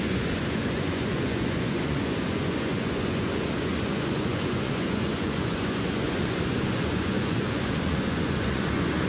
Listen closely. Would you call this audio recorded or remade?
remade